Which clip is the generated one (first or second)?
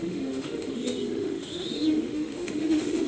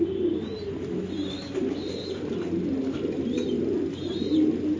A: first